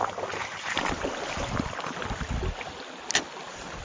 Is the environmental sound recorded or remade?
recorded